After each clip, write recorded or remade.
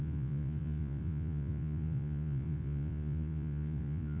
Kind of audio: remade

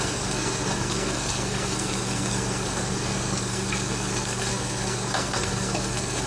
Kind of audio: remade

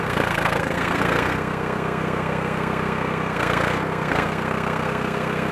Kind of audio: remade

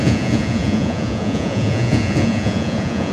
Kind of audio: remade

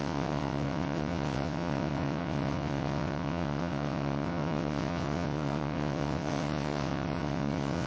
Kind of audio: remade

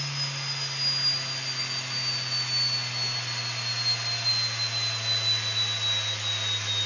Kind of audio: recorded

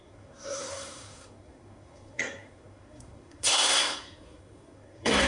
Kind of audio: remade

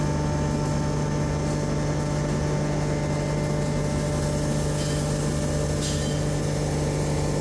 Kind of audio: recorded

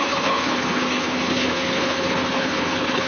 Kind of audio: remade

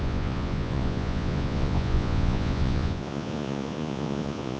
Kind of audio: remade